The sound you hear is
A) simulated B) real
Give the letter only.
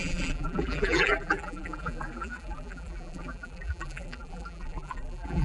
A